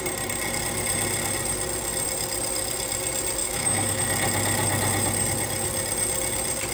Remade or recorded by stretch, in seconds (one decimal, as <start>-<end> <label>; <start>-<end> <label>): 0.0-3.4 recorded; 3.4-4.0 remade; 4.0-6.7 recorded